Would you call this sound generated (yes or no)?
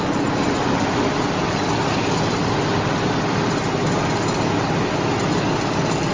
no